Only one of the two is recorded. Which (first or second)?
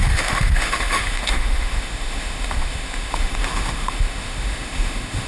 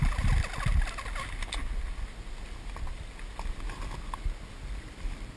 second